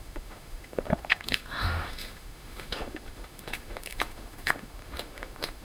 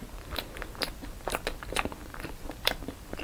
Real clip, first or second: second